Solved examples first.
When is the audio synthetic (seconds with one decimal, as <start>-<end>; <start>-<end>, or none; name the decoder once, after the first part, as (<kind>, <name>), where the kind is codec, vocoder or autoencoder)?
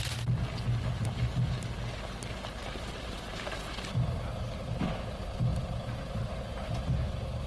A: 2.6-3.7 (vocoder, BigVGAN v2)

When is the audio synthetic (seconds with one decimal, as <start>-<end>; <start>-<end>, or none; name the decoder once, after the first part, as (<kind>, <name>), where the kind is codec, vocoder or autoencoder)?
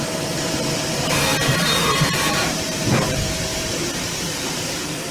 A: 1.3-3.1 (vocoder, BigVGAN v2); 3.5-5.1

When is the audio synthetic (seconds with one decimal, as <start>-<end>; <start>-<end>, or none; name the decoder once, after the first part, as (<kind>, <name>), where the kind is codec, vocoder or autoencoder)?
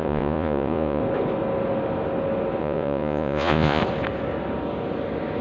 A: 0.0-1.0 (vocoder, Vocos); 2.6-3.8